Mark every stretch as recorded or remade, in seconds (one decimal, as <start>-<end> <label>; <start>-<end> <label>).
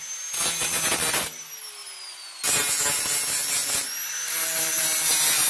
0.0-5.5 recorded